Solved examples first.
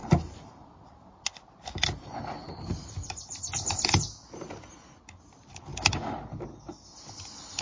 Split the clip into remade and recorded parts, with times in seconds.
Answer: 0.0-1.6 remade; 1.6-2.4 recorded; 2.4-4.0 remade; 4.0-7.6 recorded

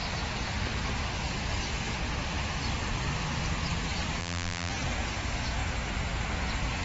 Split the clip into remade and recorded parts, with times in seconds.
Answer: 0.0-4.2 recorded; 4.2-4.7 remade; 4.7-6.8 recorded

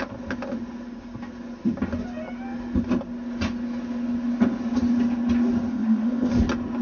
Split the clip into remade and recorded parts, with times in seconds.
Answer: 0.0-5.7 recorded; 5.7-6.3 remade; 6.3-6.8 recorded

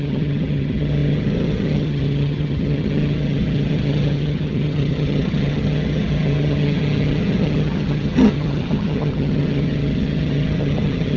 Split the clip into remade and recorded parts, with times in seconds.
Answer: 0.0-11.2 remade

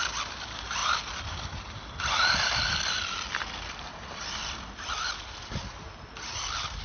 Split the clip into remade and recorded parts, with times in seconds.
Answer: 0.0-0.8 recorded; 0.8-4.9 remade; 4.9-6.8 recorded

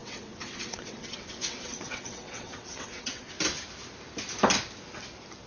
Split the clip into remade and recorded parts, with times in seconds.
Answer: 0.0-3.3 remade; 3.3-5.5 recorded

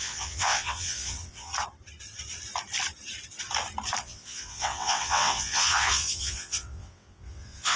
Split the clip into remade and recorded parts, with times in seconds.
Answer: 0.0-1.5 remade; 1.5-4.0 recorded; 4.0-7.8 remade

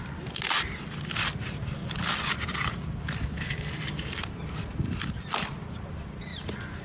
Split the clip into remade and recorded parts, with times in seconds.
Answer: 0.0-1.8 recorded; 1.8-4.2 remade; 4.2-4.7 recorded; 4.7-5.5 remade; 5.5-6.3 recorded; 6.3-6.8 remade